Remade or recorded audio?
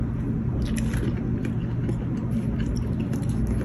recorded